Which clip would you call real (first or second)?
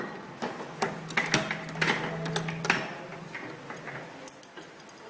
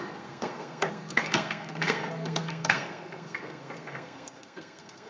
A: first